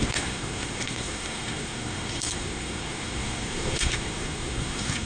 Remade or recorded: remade